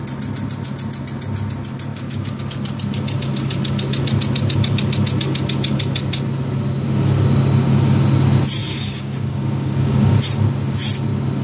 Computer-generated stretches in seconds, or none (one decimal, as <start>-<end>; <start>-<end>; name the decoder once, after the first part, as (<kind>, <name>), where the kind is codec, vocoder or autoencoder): 1.9-2.4 (codec, DAC); 8.6-10.1